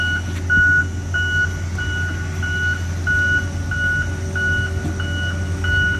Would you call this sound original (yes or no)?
yes